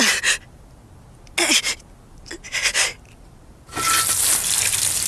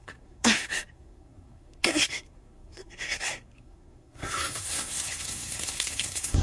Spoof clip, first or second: second